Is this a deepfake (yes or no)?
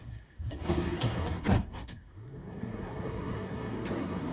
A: yes